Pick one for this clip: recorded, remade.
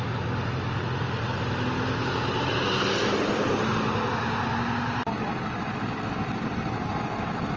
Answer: recorded